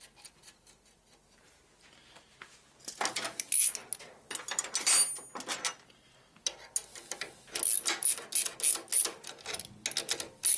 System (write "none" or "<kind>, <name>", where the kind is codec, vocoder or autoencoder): none